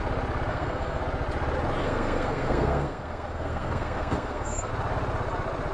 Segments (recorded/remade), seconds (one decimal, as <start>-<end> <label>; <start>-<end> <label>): 0.0-0.5 recorded; 0.5-1.0 remade; 1.0-1.8 recorded; 1.8-4.7 remade; 4.7-5.7 recorded